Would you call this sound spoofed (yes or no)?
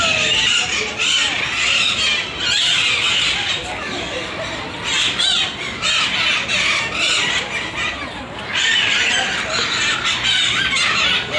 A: no